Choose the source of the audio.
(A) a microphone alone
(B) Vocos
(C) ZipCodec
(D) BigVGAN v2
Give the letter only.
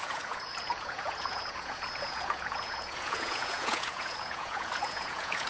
B